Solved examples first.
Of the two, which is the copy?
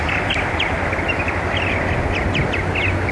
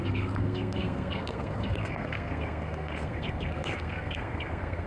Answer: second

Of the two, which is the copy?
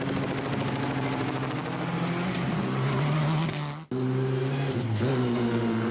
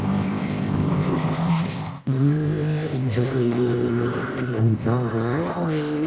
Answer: second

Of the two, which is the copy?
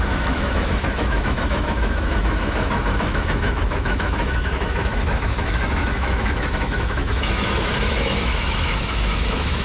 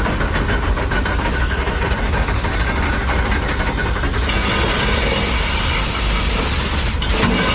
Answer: first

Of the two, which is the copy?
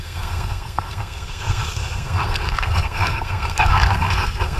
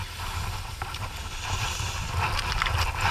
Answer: first